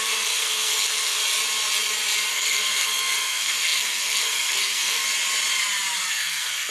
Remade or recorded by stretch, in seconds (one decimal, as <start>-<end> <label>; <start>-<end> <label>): 0.0-1.2 remade; 1.2-2.3 recorded; 2.3-5.0 remade; 5.0-6.1 recorded; 6.1-6.7 remade